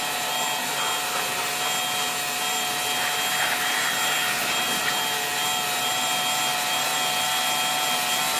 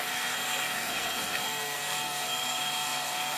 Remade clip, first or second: second